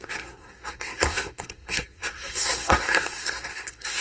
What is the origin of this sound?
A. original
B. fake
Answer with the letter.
B